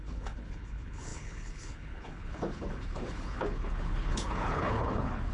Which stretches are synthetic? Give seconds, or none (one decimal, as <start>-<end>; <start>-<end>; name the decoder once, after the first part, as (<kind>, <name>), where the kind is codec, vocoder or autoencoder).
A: 0.0-5.3 (codec, HILCodec)